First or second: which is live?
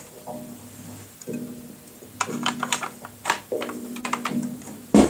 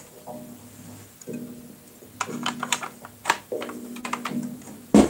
second